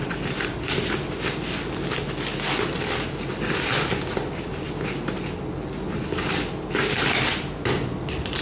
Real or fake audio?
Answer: real